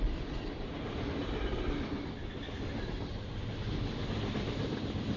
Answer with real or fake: real